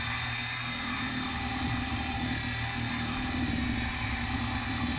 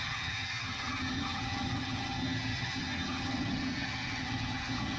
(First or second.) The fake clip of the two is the second